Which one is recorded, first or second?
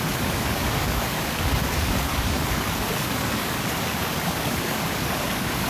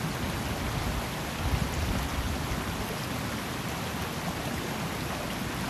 second